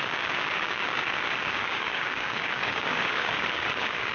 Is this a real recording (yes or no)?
no